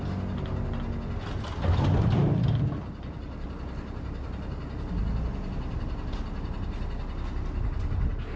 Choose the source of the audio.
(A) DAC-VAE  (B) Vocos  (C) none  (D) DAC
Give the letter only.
C